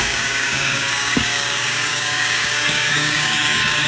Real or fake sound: fake